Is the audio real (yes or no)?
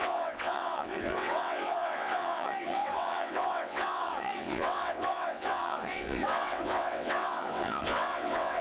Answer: no